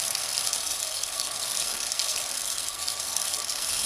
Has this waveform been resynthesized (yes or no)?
yes